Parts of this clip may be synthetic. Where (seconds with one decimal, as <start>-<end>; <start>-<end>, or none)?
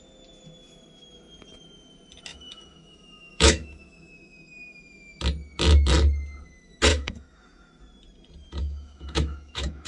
2.3-5.2; 6.9-7.8; 8.6-9.9